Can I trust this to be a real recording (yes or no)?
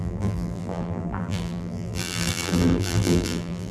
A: no